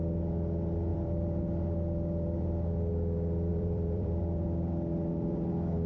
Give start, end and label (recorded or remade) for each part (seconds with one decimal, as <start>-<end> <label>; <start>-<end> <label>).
0.0-0.9 recorded; 0.9-1.4 remade; 1.4-3.5 recorded; 3.5-4.2 remade; 4.2-4.9 recorded; 4.9-5.5 remade; 5.5-5.9 recorded